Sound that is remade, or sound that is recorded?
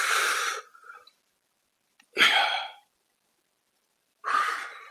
recorded